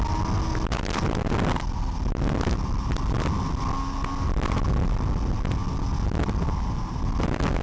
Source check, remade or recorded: recorded